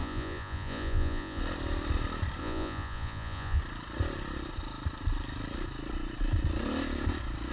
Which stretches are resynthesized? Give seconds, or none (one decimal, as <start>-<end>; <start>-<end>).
0.0-1.4; 2.4-3.6